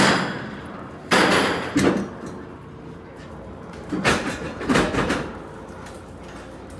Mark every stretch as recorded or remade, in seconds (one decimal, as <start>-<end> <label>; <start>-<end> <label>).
0.0-3.1 recorded; 3.1-5.1 remade; 5.1-6.8 recorded

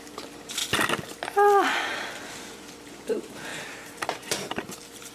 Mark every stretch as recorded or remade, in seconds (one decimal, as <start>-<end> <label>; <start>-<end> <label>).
0.0-0.6 remade; 0.6-2.3 recorded; 2.3-5.1 remade

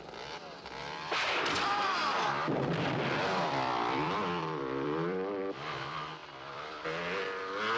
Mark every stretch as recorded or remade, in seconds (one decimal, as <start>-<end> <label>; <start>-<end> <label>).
0.0-0.8 recorded; 0.8-5.5 remade; 5.5-6.2 recorded; 6.2-6.8 remade; 6.8-7.8 recorded

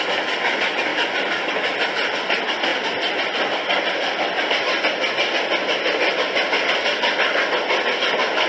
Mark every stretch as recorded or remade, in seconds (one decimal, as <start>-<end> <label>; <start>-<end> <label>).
0.0-0.9 recorded; 0.9-1.5 remade; 1.5-8.5 recorded

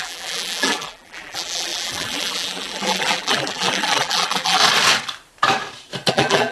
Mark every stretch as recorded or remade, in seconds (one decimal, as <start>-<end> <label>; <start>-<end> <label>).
0.0-4.6 remade; 4.6-6.1 recorded; 6.1-6.5 remade